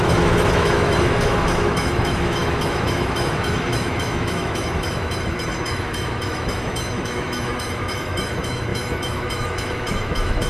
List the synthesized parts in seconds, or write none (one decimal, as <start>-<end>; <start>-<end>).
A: 0.0-10.5